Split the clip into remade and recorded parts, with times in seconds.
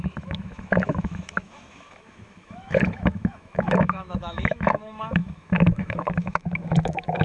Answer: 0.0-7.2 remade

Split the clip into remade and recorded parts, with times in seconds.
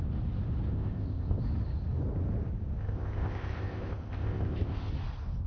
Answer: 0.0-0.7 recorded; 0.7-1.4 remade; 1.4-2.8 recorded; 2.8-4.9 remade; 4.9-5.5 recorded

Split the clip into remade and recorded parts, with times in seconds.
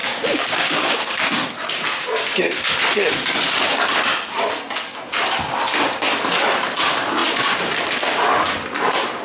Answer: 0.0-1.2 remade; 1.2-9.2 recorded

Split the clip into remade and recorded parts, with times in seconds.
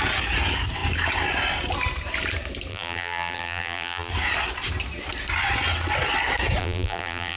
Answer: 0.0-2.7 recorded; 2.7-4.1 remade; 4.1-6.6 recorded; 6.6-7.4 remade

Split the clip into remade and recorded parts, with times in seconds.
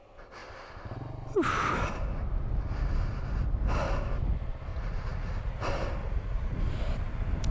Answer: 0.0-4.7 recorded; 4.7-5.5 remade; 5.5-6.0 recorded; 6.0-6.6 remade; 6.6-7.5 recorded